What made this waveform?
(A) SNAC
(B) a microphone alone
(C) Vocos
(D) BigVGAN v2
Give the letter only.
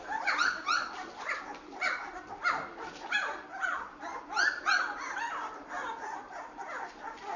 D